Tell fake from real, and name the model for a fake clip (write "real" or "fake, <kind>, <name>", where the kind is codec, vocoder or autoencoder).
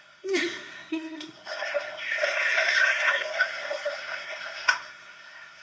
fake, codec, SNAC